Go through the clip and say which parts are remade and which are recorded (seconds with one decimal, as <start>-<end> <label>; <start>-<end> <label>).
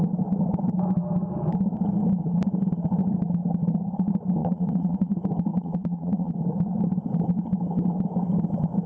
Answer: 0.0-4.4 recorded; 4.4-5.1 remade; 5.1-5.5 recorded; 5.5-6.3 remade; 6.3-8.9 recorded